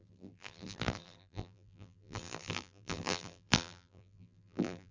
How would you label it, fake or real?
fake